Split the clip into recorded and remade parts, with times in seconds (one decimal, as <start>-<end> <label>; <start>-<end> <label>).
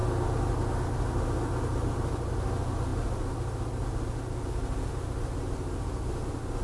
0.0-6.6 recorded